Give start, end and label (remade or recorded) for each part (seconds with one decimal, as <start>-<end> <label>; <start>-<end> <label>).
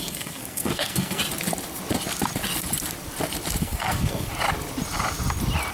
0.0-1.2 remade; 1.2-3.6 recorded; 3.6-4.3 remade; 4.3-5.7 recorded